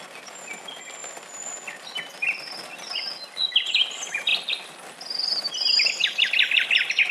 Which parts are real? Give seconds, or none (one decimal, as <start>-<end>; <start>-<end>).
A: 0.0-7.1

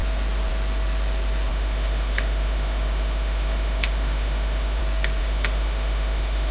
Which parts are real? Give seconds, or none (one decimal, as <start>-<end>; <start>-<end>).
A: 0.0-1.5; 4.8-5.2

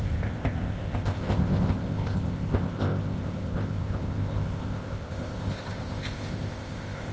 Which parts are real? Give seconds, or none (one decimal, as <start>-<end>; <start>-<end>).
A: none

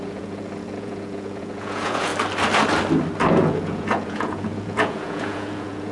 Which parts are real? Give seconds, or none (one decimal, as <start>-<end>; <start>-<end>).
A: 2.1-3.3